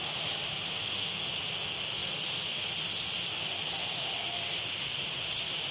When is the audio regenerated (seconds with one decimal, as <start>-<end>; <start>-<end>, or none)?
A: 0.7-1.3

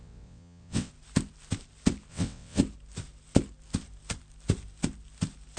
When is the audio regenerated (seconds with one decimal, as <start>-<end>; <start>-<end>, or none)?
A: 0.0-0.9; 2.1-2.6

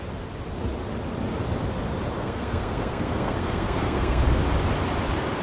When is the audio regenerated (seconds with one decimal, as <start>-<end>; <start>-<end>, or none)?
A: 2.2-4.2

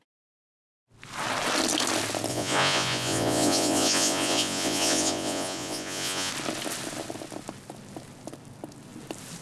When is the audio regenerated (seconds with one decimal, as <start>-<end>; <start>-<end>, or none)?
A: 2.3-6.3

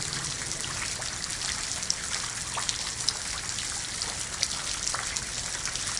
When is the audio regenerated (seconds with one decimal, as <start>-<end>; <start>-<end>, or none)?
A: none

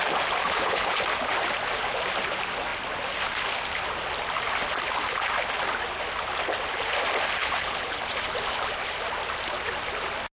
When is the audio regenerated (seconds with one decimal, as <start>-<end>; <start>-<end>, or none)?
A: 0.4-1.0; 7.4-8.0